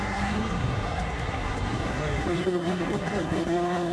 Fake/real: fake